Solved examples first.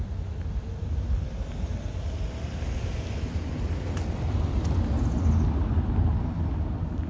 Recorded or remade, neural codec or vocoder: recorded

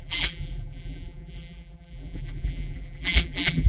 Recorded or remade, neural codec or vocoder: remade, vocoder, BigVGAN v2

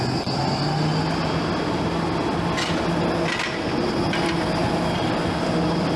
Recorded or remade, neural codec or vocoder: recorded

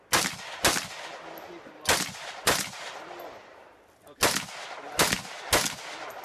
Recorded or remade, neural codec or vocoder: recorded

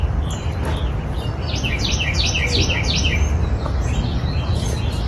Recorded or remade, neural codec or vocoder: remade, vocoder, BigVGAN v2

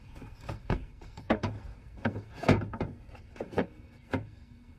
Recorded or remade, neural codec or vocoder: remade, codec, SNAC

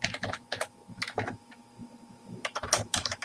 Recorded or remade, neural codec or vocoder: remade, autoencoder, DAC-VAE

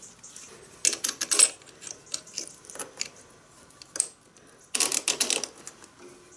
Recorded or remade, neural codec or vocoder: recorded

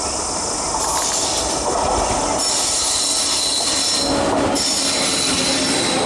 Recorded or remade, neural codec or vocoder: recorded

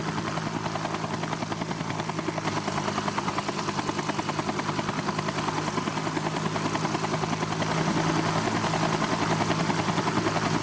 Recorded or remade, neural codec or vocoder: recorded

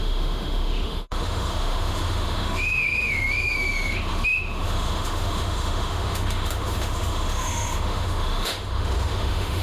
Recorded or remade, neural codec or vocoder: remade, autoencoder, DAC-VAE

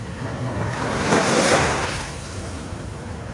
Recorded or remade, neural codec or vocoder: remade, codec, SNAC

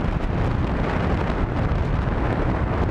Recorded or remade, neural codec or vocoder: recorded